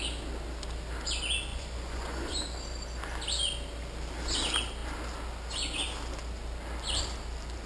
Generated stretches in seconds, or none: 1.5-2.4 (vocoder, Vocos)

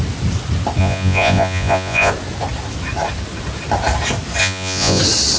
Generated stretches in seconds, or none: 0.8-2.1 (vocoder, Vocos); 4.4-5.0